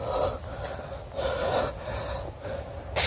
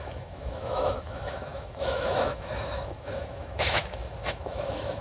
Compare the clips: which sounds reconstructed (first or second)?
second